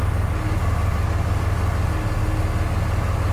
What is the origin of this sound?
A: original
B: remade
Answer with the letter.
A